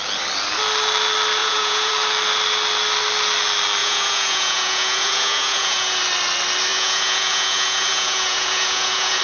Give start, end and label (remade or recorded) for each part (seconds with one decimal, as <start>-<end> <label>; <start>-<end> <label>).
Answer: 0.0-1.4 recorded; 1.4-1.9 remade; 1.9-3.8 recorded; 3.8-6.0 remade; 6.0-6.7 recorded; 6.7-9.2 remade